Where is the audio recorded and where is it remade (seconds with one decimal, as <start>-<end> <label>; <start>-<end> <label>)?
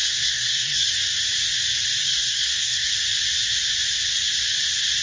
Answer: 0.0-0.9 remade; 0.9-2.0 recorded; 2.0-2.9 remade; 2.9-5.0 recorded